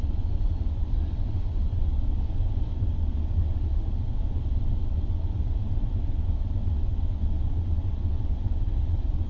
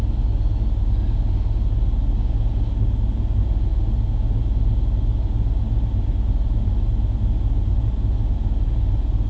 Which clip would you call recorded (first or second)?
second